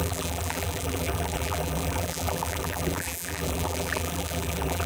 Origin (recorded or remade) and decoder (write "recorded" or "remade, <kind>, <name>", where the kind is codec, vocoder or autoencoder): remade, vocoder, BigVGAN v2